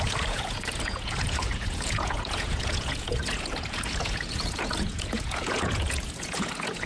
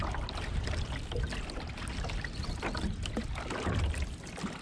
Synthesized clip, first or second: first